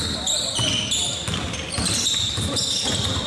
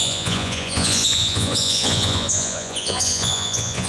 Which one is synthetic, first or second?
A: second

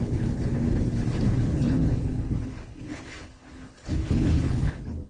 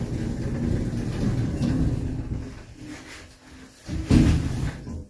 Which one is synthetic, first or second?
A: first